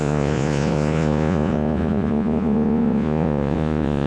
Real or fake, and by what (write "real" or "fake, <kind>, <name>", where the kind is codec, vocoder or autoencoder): fake, vocoder, Vocos